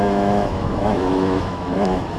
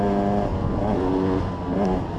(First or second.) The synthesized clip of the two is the first